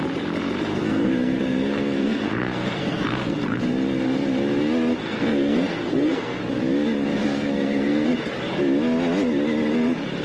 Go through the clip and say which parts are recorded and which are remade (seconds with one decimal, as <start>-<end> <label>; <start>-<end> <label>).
0.0-0.7 recorded; 0.7-3.6 remade; 3.6-5.0 recorded; 5.0-6.4 remade; 6.4-7.2 recorded; 7.2-8.1 remade; 8.1-10.2 recorded